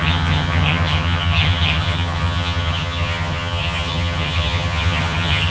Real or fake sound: fake